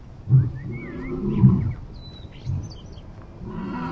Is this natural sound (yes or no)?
yes